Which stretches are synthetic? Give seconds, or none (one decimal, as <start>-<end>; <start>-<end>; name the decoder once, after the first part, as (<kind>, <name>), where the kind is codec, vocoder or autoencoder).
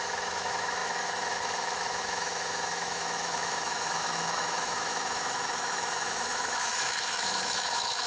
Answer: 0.0-8.1 (autoencoder, DAC-VAE)